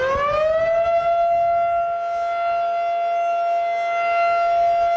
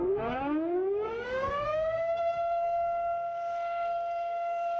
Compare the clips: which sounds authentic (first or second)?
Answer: first